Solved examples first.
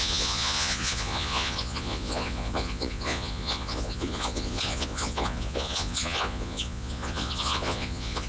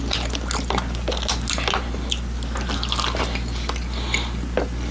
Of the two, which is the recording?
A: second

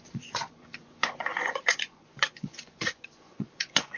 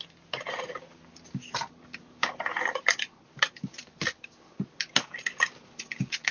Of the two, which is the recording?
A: second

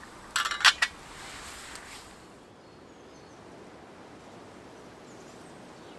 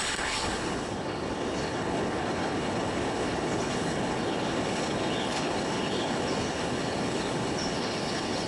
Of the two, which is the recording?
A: first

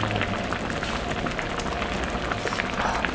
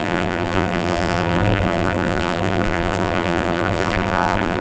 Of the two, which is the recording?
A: first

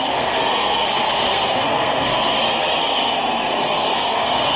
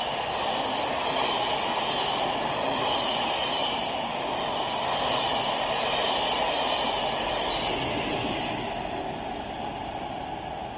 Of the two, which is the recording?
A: second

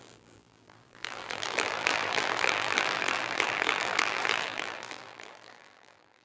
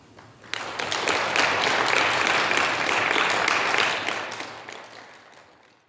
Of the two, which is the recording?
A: second